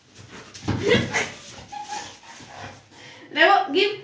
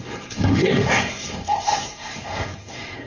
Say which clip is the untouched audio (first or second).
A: first